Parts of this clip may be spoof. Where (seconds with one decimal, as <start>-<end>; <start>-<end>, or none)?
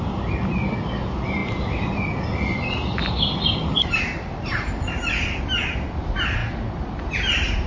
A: none